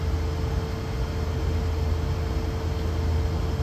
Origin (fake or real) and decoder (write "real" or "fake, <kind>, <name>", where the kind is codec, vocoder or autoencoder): real